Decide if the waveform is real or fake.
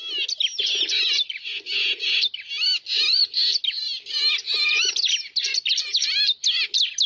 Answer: real